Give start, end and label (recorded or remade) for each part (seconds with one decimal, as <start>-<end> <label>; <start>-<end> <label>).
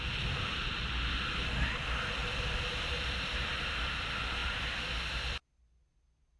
0.0-2.2 recorded; 2.2-3.9 remade; 3.9-4.4 recorded; 4.4-4.9 remade; 4.9-6.4 recorded